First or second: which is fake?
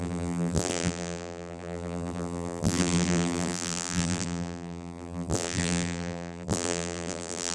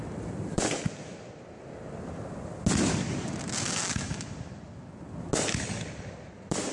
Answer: first